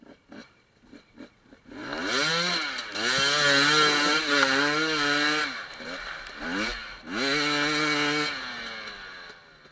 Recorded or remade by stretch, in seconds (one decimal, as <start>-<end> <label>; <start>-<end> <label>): 0.0-9.7 recorded